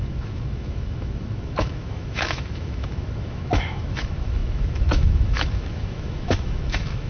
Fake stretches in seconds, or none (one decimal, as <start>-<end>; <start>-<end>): 0.0-7.1